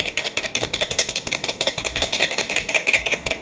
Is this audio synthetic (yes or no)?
yes